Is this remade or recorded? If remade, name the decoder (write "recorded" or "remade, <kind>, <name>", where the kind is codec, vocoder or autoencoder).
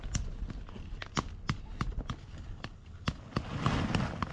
recorded